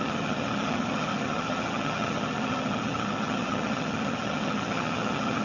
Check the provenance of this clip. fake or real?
fake